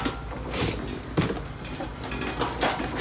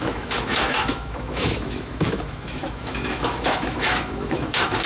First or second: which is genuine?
first